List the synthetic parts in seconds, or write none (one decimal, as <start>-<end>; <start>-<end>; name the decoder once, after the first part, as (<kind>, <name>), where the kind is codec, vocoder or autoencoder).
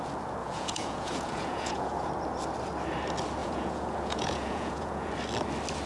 0.4-2.1 (vocoder, Vocos); 3.4-5.1